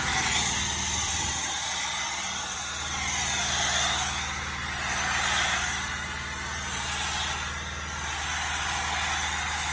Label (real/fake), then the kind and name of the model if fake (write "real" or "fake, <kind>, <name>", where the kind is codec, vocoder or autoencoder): real